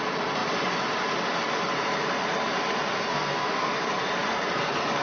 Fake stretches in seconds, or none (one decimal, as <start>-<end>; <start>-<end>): 3.1-3.7